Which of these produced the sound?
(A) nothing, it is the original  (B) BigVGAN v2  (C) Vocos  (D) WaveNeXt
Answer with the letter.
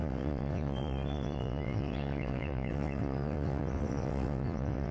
D